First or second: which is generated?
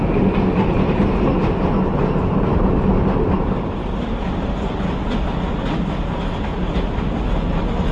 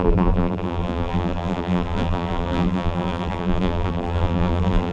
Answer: second